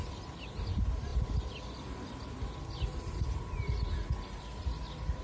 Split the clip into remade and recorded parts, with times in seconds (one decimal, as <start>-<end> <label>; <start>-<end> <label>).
0.0-5.2 recorded